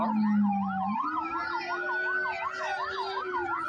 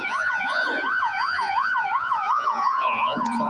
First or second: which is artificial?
second